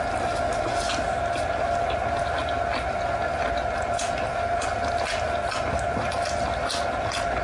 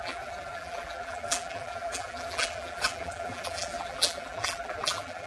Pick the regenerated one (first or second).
second